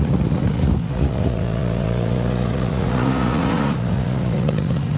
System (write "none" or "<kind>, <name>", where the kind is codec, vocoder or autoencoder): vocoder, Vocos